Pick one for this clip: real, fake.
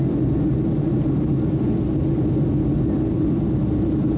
real